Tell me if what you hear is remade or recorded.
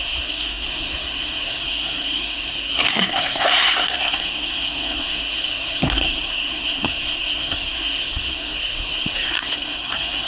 remade